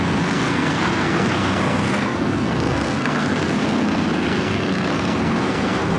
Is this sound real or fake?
fake